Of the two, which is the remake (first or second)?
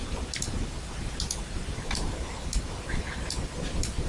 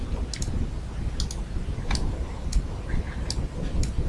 first